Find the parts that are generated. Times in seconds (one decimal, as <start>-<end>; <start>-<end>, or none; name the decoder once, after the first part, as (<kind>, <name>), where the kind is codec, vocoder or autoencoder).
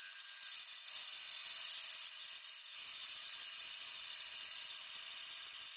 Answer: 1.6-2.2 (vocoder, Vocos); 3.0-4.7